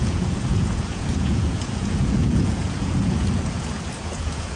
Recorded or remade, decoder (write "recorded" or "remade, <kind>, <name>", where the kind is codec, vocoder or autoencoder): remade, vocoder, Vocos